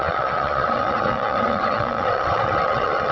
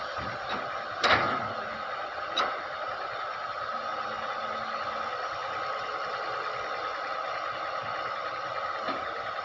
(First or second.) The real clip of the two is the second